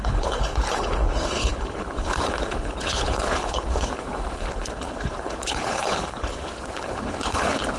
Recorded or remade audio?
remade